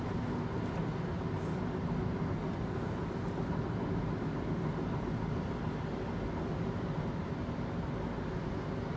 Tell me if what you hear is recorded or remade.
recorded